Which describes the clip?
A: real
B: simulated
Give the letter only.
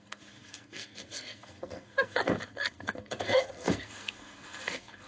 B